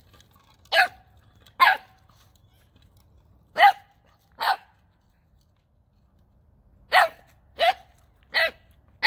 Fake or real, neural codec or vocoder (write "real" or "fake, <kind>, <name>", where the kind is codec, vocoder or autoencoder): real